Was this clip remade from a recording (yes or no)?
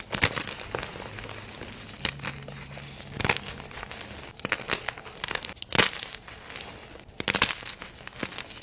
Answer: no